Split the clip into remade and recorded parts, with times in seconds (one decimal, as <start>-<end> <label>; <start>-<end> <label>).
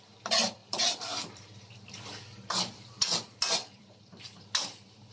0.0-0.6 recorded; 0.6-1.7 remade; 1.7-3.6 recorded; 3.6-4.4 remade; 4.4-5.1 recorded